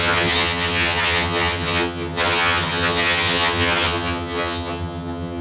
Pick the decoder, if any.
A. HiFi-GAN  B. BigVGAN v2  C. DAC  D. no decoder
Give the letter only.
A